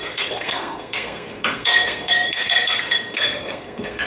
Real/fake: fake